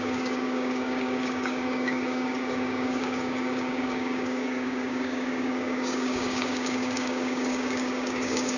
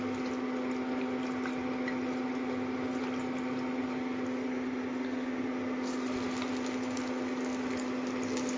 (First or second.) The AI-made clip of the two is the first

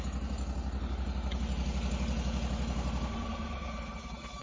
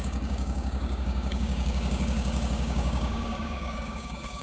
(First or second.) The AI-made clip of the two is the second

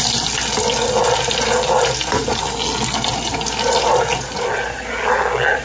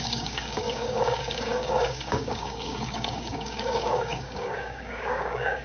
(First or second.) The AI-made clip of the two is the second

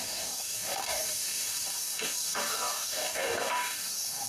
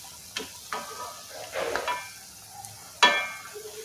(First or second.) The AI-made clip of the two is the first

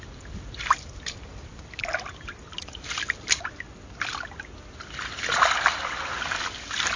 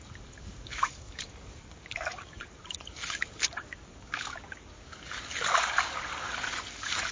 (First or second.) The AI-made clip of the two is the second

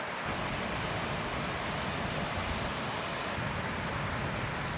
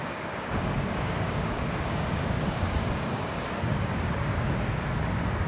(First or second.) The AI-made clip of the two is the second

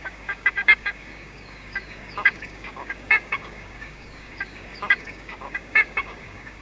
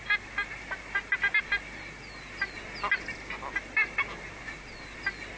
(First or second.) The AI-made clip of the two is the first